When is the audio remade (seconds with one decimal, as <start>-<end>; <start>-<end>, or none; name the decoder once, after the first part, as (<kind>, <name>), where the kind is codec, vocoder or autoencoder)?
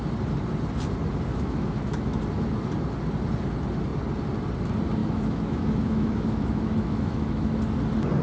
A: 1.3-2.2 (autoencoder, DAC-VAE); 5.0-7.5